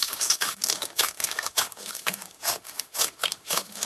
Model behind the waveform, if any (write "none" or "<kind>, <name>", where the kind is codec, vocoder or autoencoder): autoencoder, DAC-VAE